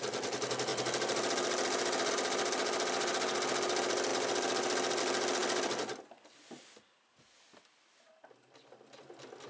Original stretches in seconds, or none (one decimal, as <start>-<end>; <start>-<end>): 0.0-9.5

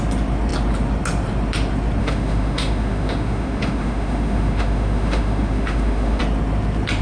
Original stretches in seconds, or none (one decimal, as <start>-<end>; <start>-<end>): 0.0-2.0; 6.2-7.0

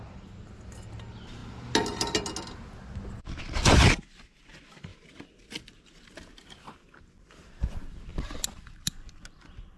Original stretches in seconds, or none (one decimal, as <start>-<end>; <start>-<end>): 0.0-4.9; 6.7-8.1; 8.9-9.8